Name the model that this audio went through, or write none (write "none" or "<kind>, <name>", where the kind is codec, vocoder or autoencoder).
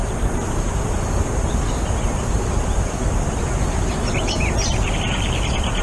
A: vocoder, BigVGAN v2